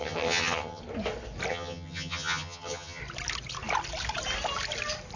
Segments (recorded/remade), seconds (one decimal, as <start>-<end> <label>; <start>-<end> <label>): 0.0-0.8 remade; 0.8-1.5 recorded; 1.5-3.0 remade; 3.0-5.2 recorded